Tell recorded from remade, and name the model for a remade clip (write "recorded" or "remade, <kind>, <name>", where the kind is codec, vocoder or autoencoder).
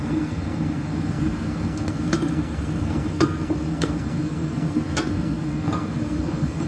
remade, codec, SNAC